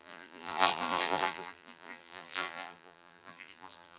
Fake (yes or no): yes